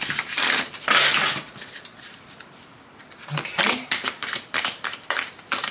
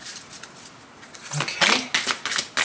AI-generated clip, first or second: first